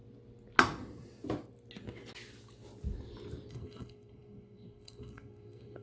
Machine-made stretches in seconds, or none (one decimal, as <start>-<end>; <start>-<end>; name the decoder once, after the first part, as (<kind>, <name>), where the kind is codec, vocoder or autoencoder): 3.5-5.8 (codec, SNAC)